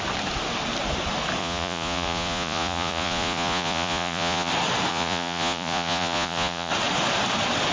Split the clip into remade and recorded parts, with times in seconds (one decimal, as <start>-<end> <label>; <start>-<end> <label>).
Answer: 0.0-1.4 recorded; 1.4-4.5 remade; 4.5-4.9 recorded; 4.9-6.7 remade; 6.7-7.7 recorded